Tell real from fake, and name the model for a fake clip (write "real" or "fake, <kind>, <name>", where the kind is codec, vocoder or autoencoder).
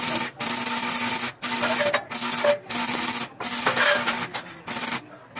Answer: real